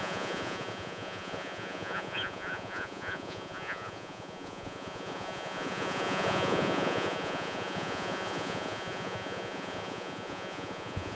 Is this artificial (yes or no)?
yes